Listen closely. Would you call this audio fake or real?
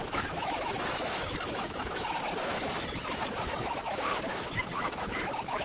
fake